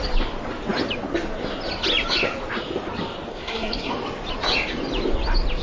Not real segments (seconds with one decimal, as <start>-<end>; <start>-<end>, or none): 3.3-3.9